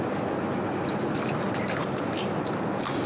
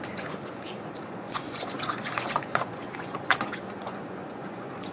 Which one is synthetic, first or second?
second